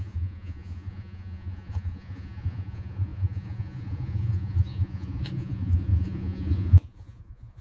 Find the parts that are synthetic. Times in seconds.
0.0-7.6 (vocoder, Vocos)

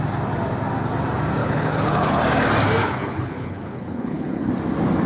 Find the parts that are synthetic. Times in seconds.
1.4-2.2 (codec, HILCodec); 2.8-4.5

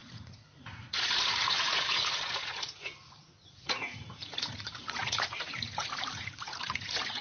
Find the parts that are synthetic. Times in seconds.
0.0-7.2 (vocoder, Vocos)

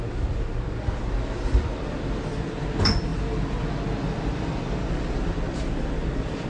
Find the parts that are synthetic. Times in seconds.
none